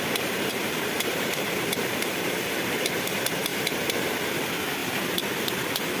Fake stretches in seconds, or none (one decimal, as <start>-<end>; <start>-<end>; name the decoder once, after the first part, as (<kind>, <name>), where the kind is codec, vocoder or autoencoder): 0.6-2.6 (vocoder, BigVGAN v2); 3.5-4.2; 4.8-5.5